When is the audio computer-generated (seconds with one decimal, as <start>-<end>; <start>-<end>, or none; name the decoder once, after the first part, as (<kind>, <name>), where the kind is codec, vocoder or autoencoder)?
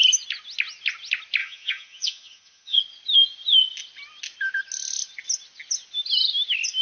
1.4-2.8 (vocoder, HiFi-GAN)